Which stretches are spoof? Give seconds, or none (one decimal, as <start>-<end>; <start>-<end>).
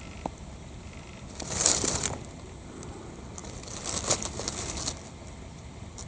none